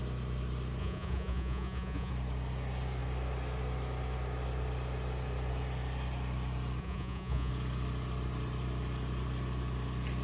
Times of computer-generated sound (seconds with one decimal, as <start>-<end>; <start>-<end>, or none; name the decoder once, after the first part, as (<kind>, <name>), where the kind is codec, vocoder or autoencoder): 0.8-2.1 (vocoder, Vocos); 6.8-7.5